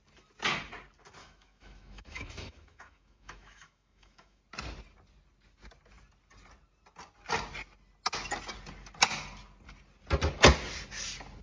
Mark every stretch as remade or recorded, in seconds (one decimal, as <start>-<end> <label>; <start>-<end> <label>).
0.0-1.2 recorded; 1.2-4.4 remade; 4.4-11.4 recorded